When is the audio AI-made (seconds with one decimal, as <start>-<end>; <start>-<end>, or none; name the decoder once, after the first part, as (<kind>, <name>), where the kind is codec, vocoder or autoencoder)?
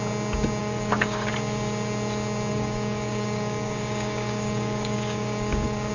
0.6-1.3 (codec, DAC); 2.5-5.9